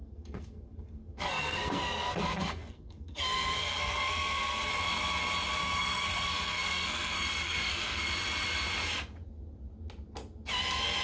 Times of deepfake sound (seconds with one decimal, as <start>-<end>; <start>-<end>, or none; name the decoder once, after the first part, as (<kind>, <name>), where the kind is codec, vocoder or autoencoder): 0.0-4.7 (codec, SNAC); 5.6-8.1